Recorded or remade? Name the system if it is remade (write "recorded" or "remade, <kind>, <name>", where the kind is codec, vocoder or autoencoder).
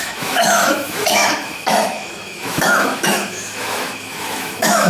remade, autoencoder, DAC-VAE